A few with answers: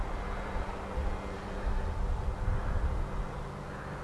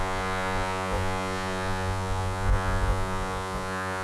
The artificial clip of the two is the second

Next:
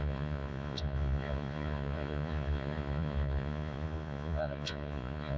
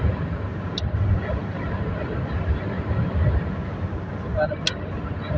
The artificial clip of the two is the first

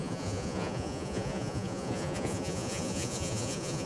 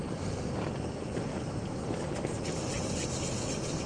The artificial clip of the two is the first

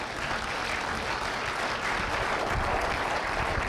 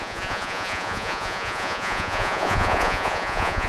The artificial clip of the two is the second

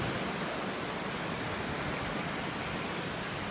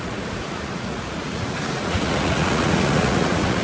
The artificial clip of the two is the second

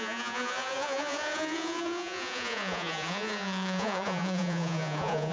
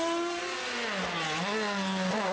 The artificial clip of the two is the first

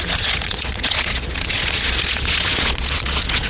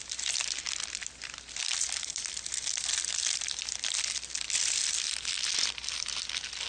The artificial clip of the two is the first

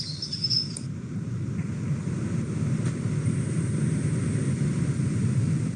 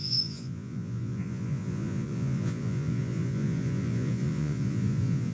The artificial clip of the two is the second